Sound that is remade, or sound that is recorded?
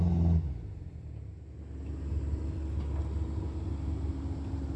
recorded